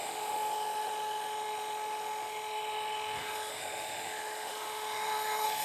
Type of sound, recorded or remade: remade